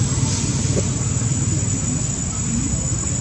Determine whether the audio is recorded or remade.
recorded